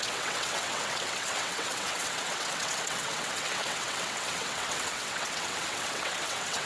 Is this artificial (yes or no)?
yes